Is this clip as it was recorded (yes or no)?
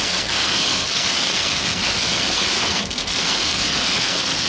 no